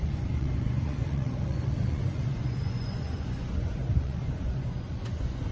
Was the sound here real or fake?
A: fake